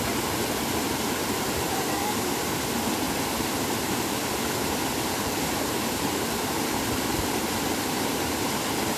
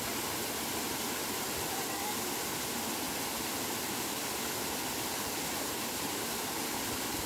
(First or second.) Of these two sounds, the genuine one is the second